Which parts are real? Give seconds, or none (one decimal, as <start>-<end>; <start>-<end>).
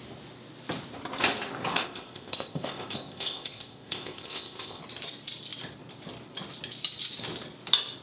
0.0-1.7; 4.8-8.0